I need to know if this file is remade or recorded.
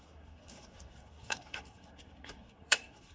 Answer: remade